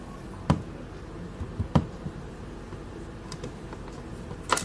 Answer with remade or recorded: recorded